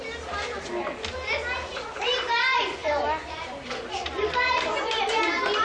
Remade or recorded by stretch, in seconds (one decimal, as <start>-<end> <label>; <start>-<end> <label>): 0.0-5.6 recorded

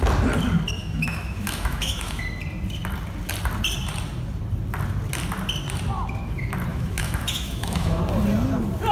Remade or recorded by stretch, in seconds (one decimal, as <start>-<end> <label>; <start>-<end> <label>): 0.0-0.8 recorded; 0.8-2.2 remade; 2.2-6.7 recorded; 6.7-8.0 remade; 8.0-8.9 recorded